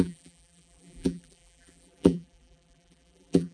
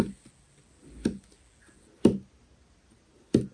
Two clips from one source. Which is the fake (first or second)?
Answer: first